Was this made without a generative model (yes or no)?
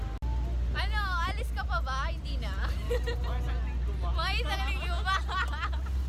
yes